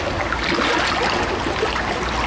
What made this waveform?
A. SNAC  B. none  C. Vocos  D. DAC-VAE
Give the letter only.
B